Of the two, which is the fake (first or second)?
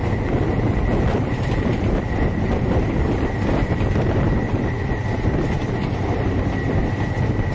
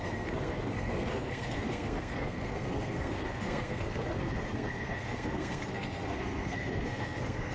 second